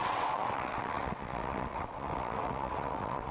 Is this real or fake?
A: fake